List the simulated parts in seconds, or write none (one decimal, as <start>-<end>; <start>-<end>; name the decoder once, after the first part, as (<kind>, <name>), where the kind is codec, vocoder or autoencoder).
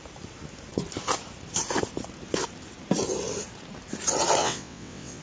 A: 4.4-5.2 (vocoder, WaveNeXt)